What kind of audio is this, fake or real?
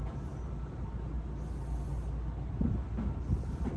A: real